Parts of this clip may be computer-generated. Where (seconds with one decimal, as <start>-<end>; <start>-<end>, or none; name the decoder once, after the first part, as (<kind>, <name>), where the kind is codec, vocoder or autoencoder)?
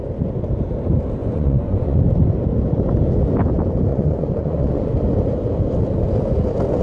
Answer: 1.2-2.0 (vocoder, Vocos); 3.9-4.9